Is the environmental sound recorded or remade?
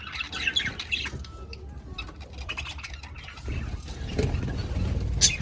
recorded